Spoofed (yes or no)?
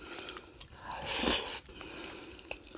no